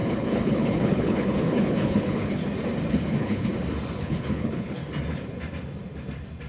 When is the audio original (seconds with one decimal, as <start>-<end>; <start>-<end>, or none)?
2.4-2.9; 3.5-4.0; 4.8-6.5